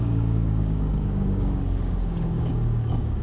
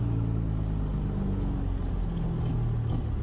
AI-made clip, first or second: first